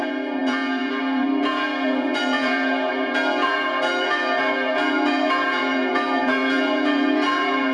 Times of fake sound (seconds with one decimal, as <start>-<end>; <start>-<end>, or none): 0.0-7.7